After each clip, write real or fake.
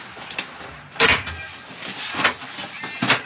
real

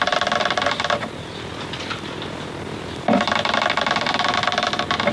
real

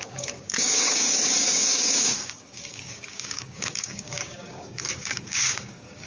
fake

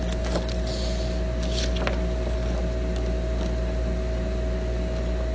real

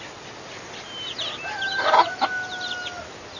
real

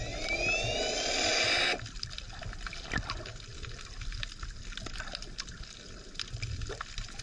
real